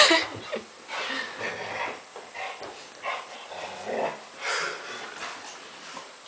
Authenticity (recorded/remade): recorded